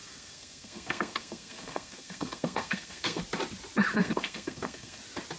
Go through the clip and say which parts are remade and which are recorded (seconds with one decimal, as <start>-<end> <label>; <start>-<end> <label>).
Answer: 0.0-3.2 remade; 3.2-4.0 recorded; 4.0-5.0 remade; 5.0-5.4 recorded